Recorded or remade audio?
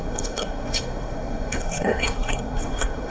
remade